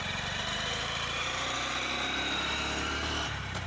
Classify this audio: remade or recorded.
remade